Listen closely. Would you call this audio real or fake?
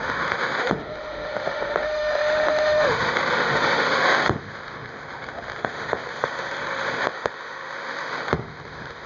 fake